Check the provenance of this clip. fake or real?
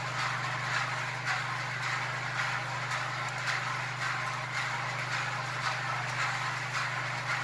real